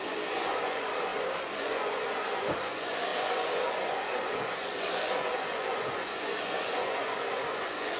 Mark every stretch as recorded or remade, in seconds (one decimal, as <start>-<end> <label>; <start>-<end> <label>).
0.0-8.0 remade